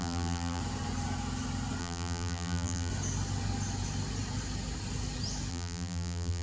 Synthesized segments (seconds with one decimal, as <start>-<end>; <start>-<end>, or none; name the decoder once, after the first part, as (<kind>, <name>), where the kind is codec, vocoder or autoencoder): 0.0-0.6 (vocoder, BigVGAN v2); 1.8-2.9; 5.5-6.4